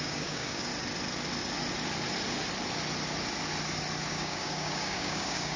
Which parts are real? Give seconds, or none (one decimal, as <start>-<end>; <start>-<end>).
0.7-4.1